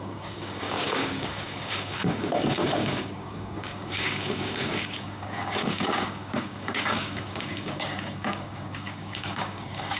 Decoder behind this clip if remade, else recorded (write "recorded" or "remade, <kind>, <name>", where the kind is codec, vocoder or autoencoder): remade, codec, DAC